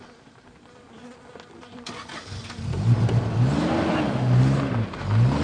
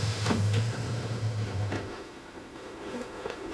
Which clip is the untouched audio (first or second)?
first